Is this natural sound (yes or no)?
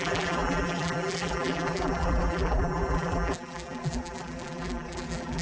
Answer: no